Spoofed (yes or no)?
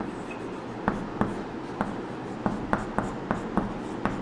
no